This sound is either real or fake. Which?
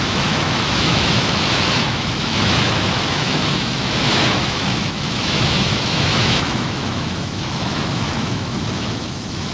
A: fake